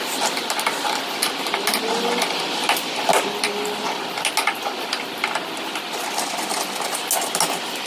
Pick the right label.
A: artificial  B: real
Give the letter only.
B